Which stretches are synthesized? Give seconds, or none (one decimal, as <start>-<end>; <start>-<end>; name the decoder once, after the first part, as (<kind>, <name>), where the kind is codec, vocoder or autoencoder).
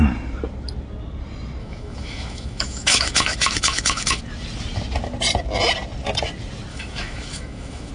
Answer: 1.6-4.2 (autoencoder, DAC-VAE); 6.7-7.9